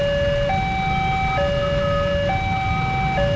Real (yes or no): yes